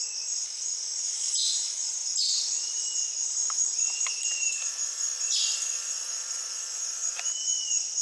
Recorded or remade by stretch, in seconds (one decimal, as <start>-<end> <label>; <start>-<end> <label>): 0.0-8.0 recorded